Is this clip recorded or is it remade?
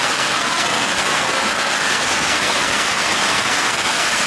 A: remade